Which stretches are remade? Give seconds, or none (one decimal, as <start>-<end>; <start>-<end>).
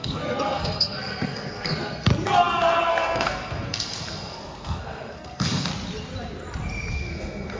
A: 0.0-2.1; 2.9-5.7; 6.9-7.6